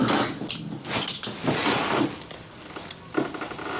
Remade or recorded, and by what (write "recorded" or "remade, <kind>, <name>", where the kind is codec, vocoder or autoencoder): recorded